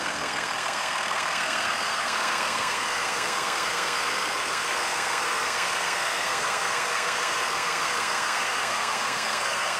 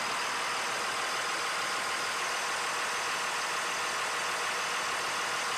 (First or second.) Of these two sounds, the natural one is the second